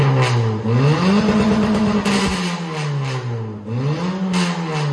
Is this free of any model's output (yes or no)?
yes